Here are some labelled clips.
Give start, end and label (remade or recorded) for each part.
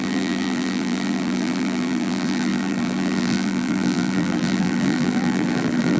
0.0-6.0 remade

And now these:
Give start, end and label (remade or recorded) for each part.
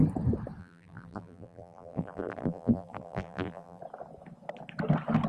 0.0-0.6 recorded; 0.6-3.8 remade; 3.8-5.3 recorded